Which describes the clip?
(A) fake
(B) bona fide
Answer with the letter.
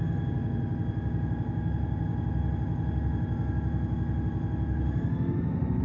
B